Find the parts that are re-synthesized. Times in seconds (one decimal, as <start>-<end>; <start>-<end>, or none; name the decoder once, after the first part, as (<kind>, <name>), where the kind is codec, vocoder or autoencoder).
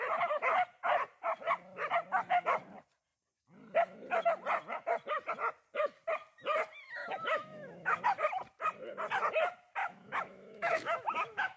7.0-8.0 (autoencoder, DAC-VAE); 9.8-11.6